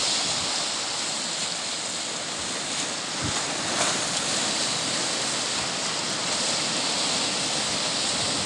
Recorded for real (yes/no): yes